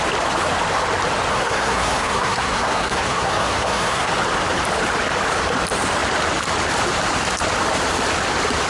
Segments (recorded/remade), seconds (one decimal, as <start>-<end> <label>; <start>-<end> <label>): 0.0-1.3 recorded; 1.3-4.1 remade; 4.1-8.7 recorded